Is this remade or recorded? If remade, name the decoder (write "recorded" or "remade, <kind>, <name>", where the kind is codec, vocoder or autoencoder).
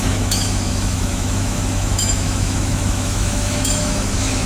remade, autoencoder, DAC-VAE